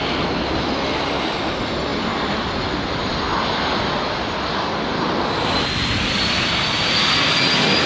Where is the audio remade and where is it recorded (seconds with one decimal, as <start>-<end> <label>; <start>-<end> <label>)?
0.0-7.9 recorded